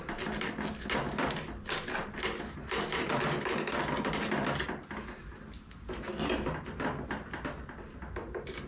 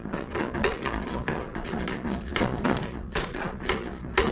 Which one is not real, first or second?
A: second